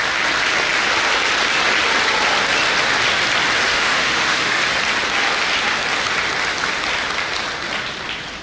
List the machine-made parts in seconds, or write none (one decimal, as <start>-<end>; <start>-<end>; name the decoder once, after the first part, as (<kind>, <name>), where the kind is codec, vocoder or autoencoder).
3.7-4.6 (autoencoder, DAC-VAE)